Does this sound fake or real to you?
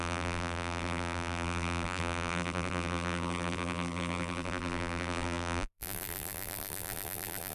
fake